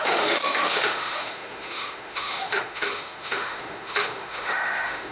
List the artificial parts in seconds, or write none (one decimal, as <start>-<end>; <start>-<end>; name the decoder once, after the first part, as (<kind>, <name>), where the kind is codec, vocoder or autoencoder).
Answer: 0.0-5.1 (autoencoder, DAC-VAE)